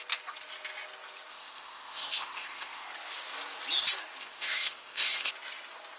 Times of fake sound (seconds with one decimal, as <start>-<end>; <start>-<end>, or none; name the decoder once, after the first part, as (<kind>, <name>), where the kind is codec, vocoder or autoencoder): 1.3-2.9 (codec, ZipCodec); 4.2-5.3